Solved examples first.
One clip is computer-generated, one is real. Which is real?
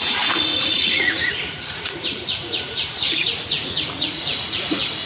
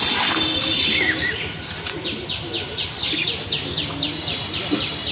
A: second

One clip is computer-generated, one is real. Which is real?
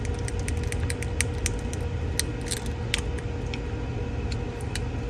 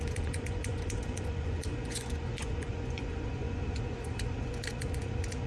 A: first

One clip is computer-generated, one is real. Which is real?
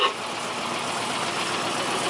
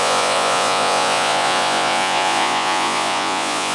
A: first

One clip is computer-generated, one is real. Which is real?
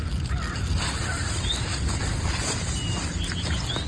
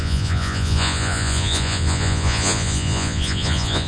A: first